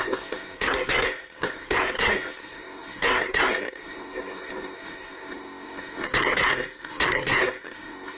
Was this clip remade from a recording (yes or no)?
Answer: yes